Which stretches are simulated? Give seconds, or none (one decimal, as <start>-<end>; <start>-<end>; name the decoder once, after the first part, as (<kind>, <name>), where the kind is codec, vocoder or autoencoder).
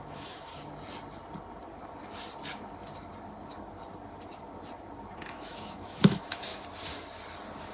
0.0-0.5 (autoencoder, DAC-VAE); 5.1-6.5